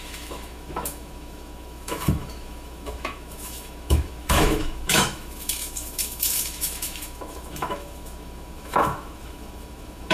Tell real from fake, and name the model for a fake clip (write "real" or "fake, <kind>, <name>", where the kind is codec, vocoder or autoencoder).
fake, autoencoder, DAC-VAE